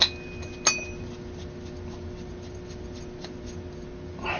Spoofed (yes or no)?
no